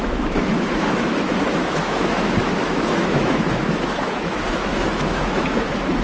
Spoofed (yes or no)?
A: yes